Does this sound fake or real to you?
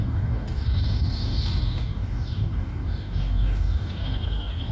fake